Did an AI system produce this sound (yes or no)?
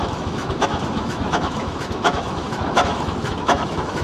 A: yes